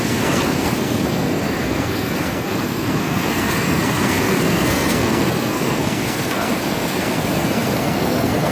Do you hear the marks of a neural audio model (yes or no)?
yes